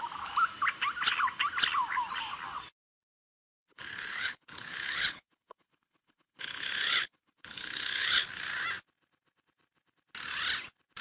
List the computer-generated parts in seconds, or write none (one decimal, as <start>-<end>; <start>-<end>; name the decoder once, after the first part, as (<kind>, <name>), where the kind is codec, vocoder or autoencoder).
3.6-8.3 (codec, HILCodec)